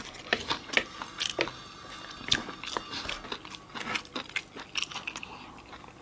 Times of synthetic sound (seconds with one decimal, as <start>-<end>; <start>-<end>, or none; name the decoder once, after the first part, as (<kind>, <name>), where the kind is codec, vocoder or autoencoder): none